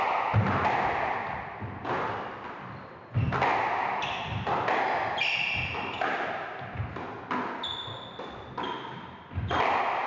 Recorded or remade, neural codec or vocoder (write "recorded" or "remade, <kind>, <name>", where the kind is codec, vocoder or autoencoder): recorded